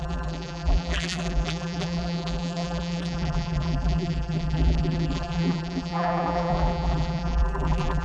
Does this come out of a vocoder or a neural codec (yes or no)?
yes